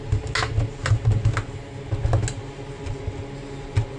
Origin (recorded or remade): recorded